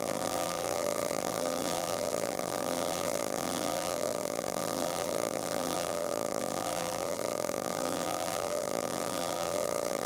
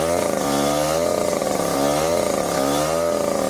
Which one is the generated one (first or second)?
first